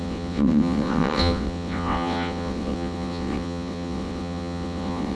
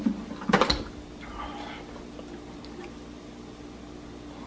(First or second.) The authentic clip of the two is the second